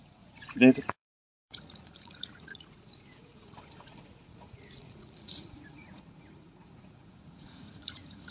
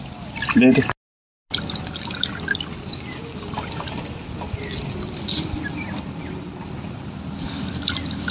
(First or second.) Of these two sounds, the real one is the second